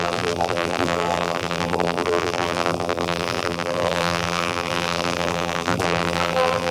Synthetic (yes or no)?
yes